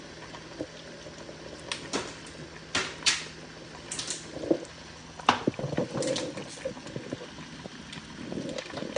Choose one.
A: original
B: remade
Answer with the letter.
A